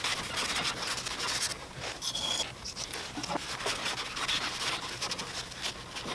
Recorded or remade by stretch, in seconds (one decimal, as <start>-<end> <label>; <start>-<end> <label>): 0.0-1.5 recorded; 1.5-2.6 remade; 2.6-6.1 recorded